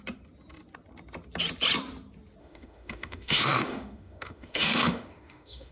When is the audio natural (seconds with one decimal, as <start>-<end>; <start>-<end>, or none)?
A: 0.0-2.4